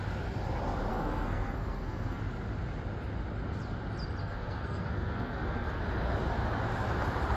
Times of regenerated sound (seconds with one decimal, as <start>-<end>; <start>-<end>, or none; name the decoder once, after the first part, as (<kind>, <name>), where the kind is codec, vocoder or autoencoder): 0.9-2.2 (codec, SNAC); 4.2-5.8